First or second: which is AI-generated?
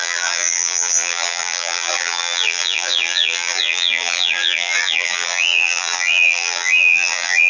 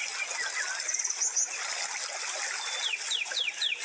first